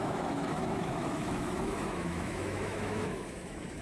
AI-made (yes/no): yes